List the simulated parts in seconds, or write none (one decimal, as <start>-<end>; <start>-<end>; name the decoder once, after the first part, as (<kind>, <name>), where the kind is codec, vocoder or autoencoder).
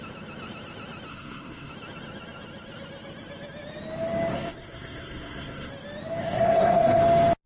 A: 1.1-1.7 (codec, SNAC); 4.3-5.7; 6.2-7.0